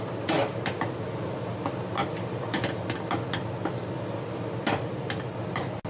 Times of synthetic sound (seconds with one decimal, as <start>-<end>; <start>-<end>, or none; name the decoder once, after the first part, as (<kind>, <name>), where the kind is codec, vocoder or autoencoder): none